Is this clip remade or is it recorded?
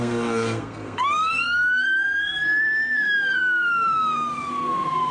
remade